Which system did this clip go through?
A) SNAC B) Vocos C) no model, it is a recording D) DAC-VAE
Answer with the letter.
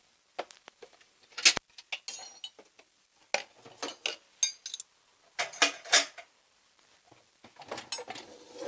C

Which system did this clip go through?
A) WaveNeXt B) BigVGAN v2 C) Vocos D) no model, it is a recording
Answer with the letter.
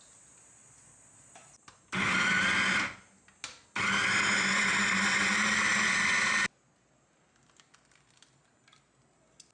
D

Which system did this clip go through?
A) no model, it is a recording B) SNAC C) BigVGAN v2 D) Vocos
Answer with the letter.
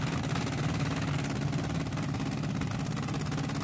A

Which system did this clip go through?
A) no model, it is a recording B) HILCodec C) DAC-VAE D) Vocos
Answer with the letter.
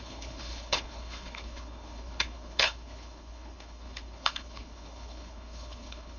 B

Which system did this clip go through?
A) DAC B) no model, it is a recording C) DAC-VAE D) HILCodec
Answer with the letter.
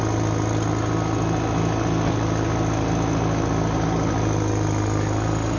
B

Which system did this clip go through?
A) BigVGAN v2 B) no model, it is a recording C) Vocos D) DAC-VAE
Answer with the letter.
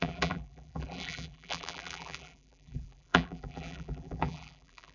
A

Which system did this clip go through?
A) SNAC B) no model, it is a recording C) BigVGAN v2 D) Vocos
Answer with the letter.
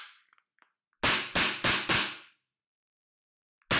B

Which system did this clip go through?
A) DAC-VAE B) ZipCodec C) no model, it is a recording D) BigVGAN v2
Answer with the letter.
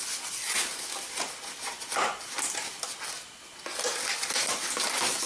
C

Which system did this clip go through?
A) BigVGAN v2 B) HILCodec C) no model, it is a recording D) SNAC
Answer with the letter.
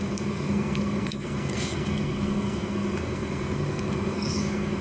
D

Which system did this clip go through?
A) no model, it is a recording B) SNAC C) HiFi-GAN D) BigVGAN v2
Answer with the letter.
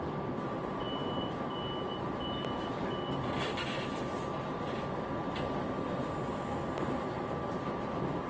A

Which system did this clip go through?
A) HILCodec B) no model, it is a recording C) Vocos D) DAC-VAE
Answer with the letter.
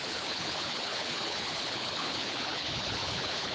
A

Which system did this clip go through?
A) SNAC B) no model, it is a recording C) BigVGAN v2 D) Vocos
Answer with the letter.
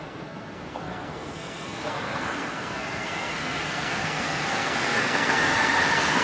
A